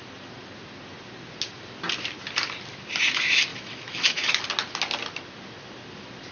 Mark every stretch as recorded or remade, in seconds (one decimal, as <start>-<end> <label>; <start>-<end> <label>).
0.0-3.5 recorded; 3.5-4.4 remade; 4.4-6.3 recorded